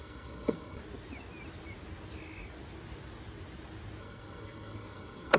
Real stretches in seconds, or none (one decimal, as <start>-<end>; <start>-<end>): 0.8-4.0